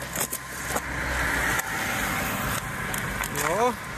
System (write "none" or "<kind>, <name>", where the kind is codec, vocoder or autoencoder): none